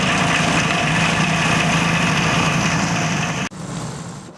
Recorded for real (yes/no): yes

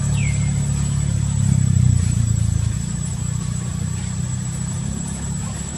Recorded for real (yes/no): no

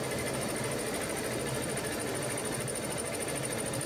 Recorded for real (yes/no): yes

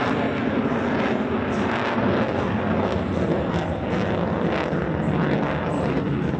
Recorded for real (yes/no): yes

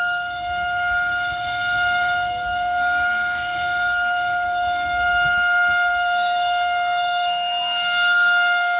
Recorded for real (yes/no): no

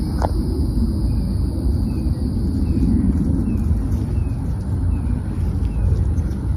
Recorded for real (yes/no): yes